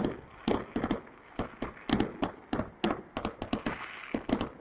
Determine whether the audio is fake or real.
real